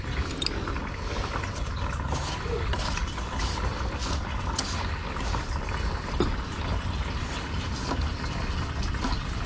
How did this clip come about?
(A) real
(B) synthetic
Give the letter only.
A